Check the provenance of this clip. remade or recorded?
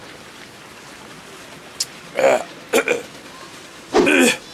recorded